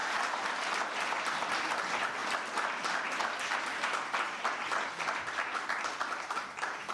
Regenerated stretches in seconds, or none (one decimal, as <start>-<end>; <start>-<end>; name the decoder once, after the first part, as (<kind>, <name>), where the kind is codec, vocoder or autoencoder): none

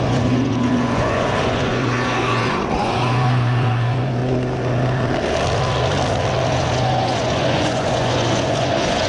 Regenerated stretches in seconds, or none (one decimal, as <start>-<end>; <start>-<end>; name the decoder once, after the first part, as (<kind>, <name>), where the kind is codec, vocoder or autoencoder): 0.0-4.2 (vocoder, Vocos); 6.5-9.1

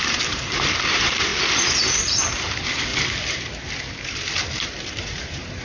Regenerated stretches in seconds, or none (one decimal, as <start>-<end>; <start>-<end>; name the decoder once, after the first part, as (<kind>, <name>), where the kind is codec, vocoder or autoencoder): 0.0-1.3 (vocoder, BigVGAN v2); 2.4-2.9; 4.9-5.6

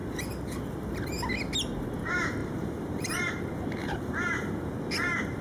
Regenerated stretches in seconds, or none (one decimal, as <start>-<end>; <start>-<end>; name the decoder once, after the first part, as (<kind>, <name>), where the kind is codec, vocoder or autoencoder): 2.4-3.3 (vocoder, BigVGAN v2); 3.8-4.5

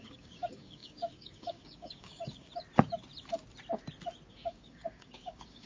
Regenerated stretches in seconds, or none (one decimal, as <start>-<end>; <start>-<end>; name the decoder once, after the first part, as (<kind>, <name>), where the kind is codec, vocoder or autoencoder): 0.0-2.5 (codec, DAC); 4.3-5.7